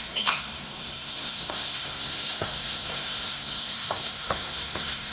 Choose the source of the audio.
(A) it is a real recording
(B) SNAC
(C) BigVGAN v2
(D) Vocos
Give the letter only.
B